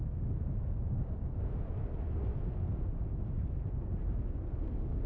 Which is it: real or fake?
real